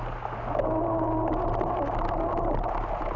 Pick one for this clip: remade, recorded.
recorded